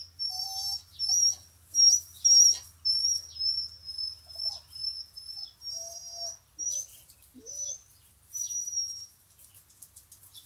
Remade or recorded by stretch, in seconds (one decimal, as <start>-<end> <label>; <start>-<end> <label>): 0.0-8.6 recorded; 8.6-9.5 remade; 9.5-10.5 recorded